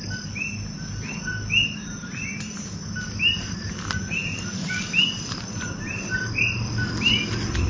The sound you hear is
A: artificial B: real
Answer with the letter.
B